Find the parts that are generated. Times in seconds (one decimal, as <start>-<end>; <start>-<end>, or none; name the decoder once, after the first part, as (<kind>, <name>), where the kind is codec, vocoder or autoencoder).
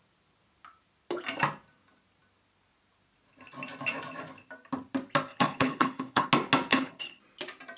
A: 5.3-6.3 (codec, HILCodec); 6.7-7.2